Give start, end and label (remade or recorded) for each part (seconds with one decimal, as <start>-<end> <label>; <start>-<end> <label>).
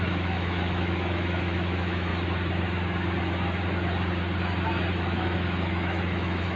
0.0-2.1 remade; 2.1-4.9 recorded; 4.9-6.6 remade